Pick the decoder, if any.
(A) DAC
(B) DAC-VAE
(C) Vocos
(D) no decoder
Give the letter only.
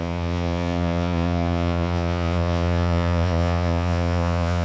C